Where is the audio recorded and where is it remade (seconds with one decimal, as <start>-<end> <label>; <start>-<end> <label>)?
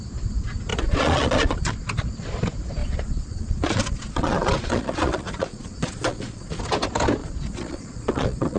0.0-0.7 recorded; 0.7-1.7 remade; 1.7-2.8 recorded; 2.8-6.6 remade; 6.6-7.2 recorded; 7.2-8.6 remade